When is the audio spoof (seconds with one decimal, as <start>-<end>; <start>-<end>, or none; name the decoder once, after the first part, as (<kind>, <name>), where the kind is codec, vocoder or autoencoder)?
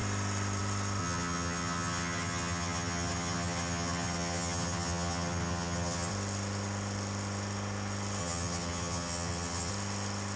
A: 1.0-6.1 (vocoder, HiFi-GAN); 8.2-9.7